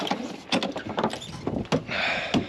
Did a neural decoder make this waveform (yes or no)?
no